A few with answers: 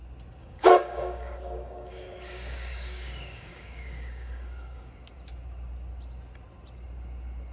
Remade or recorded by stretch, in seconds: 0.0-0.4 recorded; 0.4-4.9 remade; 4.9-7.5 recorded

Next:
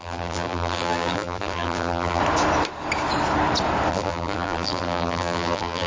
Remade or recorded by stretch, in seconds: 0.0-2.2 remade; 2.2-3.9 recorded; 3.9-5.9 remade